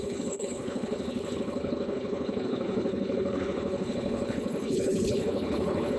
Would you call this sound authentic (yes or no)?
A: no